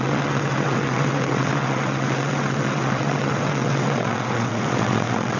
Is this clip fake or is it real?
fake